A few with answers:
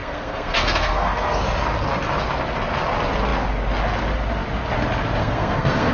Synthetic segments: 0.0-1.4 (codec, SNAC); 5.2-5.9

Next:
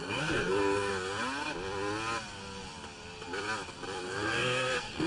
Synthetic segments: 0.0-0.9 (codec, SNAC); 4.0-5.1

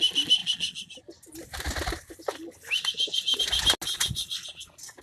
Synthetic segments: none